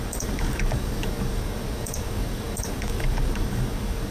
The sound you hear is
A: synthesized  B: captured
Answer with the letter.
A